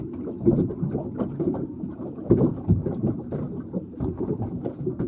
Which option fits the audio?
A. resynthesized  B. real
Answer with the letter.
A